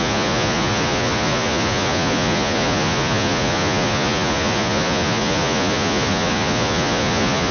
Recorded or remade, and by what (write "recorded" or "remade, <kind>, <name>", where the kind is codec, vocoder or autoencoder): remade, vocoder, Vocos